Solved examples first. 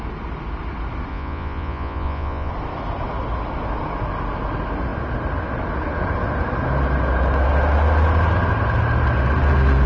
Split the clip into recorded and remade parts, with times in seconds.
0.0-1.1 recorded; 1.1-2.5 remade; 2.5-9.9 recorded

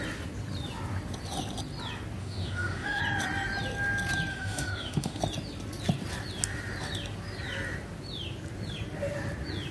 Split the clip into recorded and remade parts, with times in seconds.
0.0-2.2 recorded; 2.2-3.0 remade; 3.0-4.3 recorded; 4.3-5.2 remade; 5.2-9.7 recorded